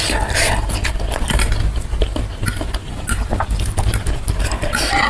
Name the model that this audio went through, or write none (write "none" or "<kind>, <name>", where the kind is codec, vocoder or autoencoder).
none